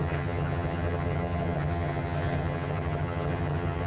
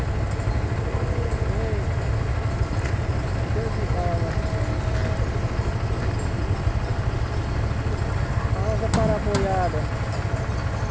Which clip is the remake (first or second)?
first